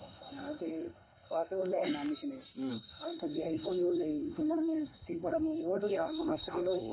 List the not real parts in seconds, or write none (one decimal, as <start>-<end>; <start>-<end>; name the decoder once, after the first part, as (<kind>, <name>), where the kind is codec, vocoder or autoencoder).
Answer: 0.0-1.9 (codec, SNAC); 2.7-6.9